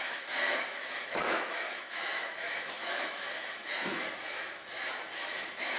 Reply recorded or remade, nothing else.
remade